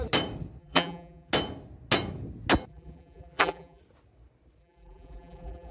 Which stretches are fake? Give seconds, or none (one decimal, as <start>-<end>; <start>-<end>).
0.6-1.3; 2.7-3.8; 4.6-5.7